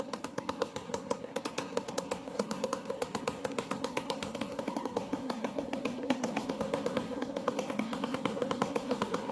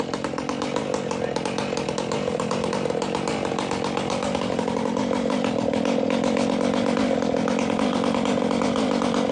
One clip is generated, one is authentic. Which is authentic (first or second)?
second